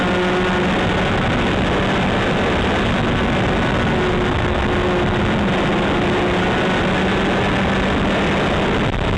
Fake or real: real